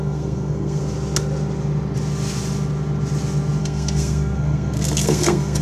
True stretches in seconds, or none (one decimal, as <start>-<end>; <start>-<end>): 0.8-3.6